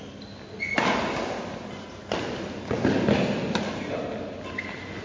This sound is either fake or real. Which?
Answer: real